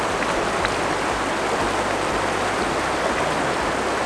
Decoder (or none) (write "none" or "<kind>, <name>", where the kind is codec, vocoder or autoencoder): vocoder, BigVGAN v2